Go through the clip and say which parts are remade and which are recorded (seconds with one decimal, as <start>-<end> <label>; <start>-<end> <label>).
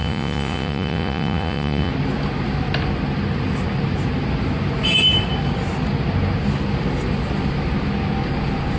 0.0-1.9 remade; 1.9-8.8 recorded